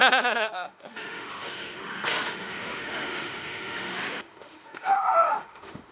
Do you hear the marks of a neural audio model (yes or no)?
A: yes